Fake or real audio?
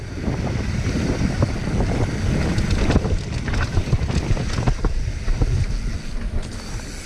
real